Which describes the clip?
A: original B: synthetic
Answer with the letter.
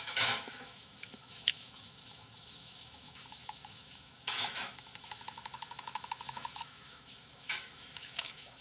B